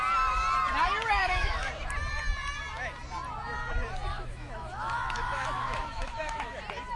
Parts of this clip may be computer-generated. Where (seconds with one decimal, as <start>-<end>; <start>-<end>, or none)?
1.2-1.7; 4.1-6.6